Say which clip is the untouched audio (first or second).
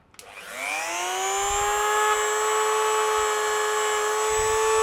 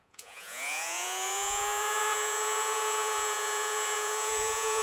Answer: first